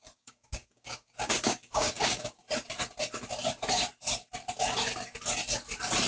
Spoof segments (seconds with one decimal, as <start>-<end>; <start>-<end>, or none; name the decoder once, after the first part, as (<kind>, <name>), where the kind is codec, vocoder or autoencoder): 0.0-2.4 (codec, DAC)